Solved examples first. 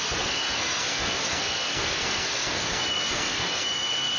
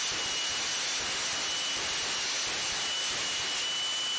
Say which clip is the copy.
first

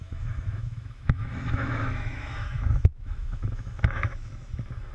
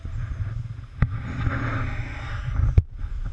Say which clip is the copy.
first